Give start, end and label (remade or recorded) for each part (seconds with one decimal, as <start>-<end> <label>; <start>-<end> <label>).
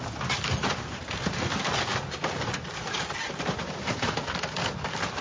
0.0-5.2 recorded